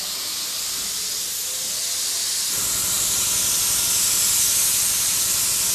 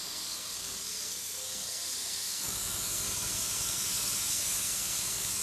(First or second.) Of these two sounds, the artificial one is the second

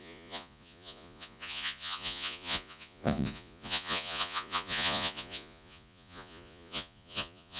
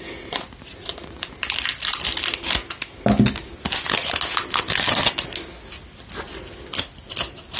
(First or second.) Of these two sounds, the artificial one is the first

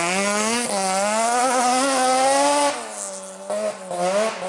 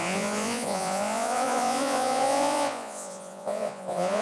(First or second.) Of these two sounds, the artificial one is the second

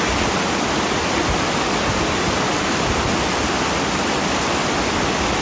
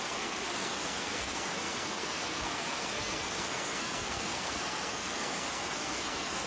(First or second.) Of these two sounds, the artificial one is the second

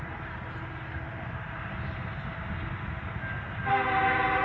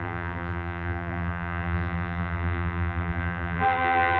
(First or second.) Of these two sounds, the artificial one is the second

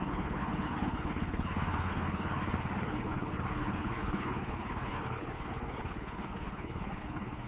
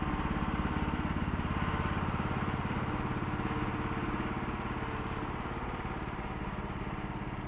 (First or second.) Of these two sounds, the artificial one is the first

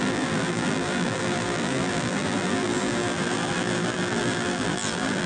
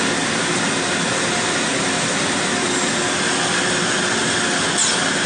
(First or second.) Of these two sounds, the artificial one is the first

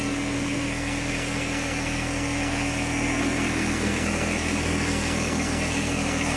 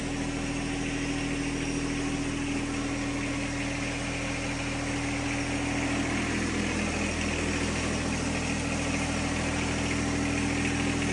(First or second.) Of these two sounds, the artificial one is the first